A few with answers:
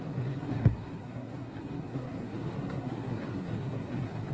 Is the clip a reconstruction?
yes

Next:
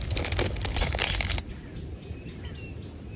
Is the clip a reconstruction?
no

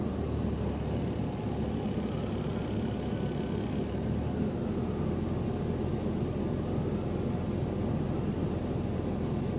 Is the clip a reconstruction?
no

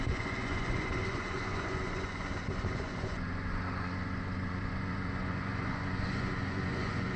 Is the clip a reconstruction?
yes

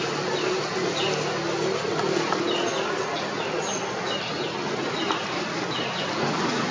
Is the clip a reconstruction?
no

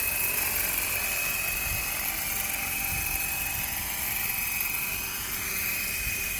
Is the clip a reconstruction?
no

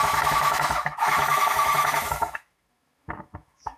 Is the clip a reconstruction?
yes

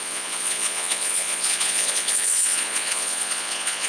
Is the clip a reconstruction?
yes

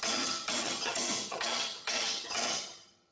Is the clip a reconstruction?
yes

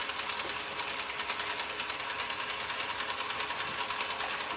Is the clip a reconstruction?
no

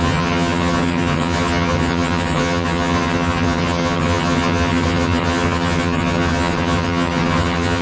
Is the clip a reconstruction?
yes